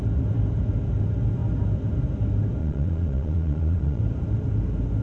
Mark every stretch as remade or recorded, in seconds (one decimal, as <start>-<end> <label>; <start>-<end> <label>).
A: 0.0-2.6 recorded; 2.6-4.0 remade; 4.0-5.0 recorded